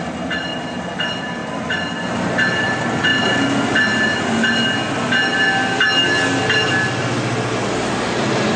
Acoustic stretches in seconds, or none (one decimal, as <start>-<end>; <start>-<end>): 0.0-8.6